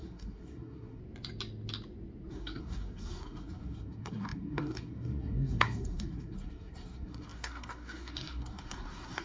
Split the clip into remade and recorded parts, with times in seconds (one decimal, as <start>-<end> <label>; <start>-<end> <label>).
0.0-1.0 remade; 1.0-2.3 recorded; 2.3-9.2 remade